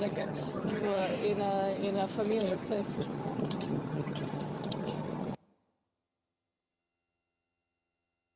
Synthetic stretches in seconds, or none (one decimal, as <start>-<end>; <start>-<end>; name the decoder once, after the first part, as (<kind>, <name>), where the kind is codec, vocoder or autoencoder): 0.0-1.0 (vocoder, HiFi-GAN); 2.4-8.4